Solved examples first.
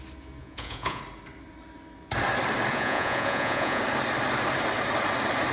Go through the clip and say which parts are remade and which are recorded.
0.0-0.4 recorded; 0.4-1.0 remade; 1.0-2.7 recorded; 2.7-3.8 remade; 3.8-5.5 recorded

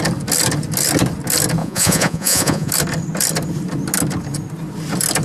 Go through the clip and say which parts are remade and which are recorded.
0.0-1.6 recorded; 1.6-2.7 remade; 2.7-5.2 recorded

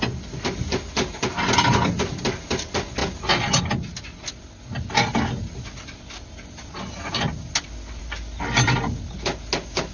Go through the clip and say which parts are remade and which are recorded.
0.0-9.9 recorded

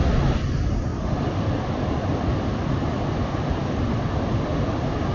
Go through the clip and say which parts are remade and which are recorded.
0.0-5.1 recorded

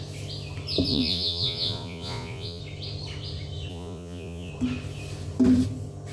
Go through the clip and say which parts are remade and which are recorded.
0.0-0.9 recorded; 0.9-2.6 remade; 2.6-3.7 recorded; 3.7-4.5 remade; 4.5-6.1 recorded